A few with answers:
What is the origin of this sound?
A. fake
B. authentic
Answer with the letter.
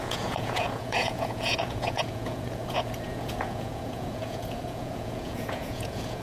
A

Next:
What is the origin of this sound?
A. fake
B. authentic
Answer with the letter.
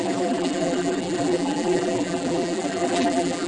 A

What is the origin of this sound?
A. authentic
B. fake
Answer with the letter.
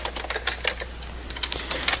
A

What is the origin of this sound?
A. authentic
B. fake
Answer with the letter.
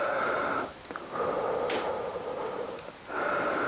B